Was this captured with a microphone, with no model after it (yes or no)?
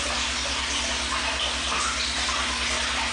yes